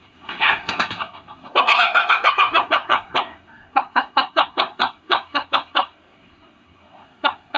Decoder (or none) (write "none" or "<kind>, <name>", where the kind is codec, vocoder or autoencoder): codec, SNAC